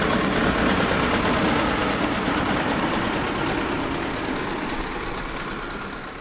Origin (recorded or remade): recorded